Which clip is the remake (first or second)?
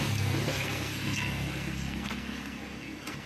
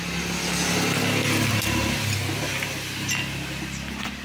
first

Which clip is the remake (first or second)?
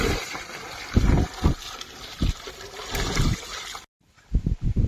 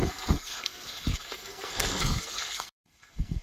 second